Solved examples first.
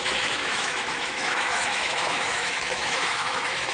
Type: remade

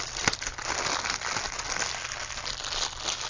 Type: recorded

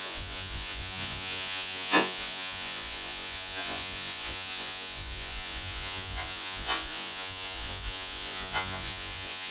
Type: remade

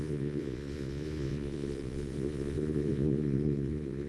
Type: remade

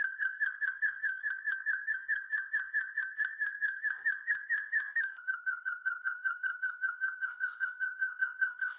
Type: remade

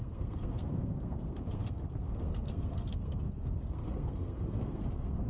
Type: remade